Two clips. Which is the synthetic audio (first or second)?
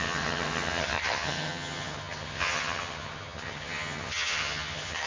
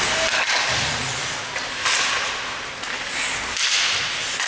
first